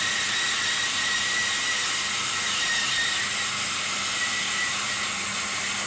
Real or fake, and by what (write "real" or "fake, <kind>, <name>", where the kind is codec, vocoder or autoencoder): real